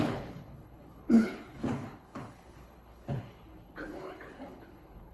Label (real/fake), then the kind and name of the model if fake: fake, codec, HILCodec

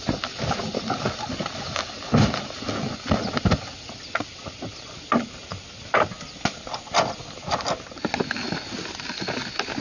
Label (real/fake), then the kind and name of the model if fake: real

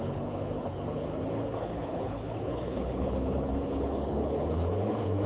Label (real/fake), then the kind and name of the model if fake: fake, codec, HILCodec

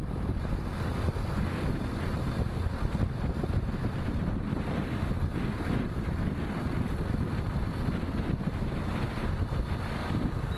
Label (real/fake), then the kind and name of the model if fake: real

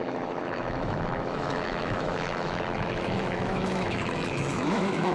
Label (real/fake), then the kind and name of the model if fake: fake, autoencoder, DAC-VAE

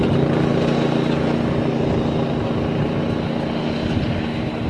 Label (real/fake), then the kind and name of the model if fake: real